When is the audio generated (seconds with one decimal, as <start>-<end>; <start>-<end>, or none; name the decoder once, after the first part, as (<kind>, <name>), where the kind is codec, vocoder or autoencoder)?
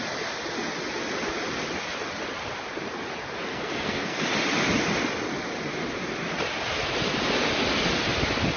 3.5-4.2 (codec, SNAC)